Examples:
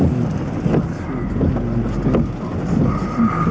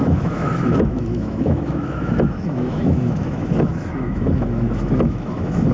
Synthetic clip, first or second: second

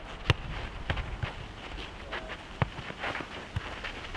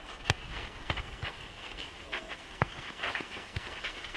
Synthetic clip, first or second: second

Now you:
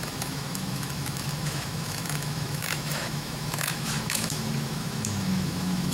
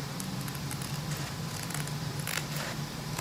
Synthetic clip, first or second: first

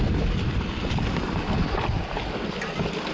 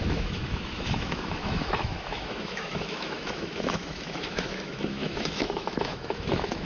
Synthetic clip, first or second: second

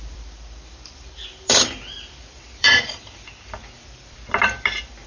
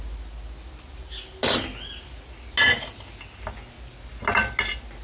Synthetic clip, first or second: first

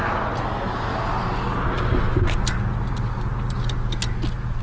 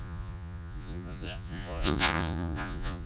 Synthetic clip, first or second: second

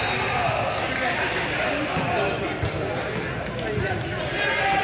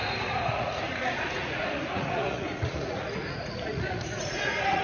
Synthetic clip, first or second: second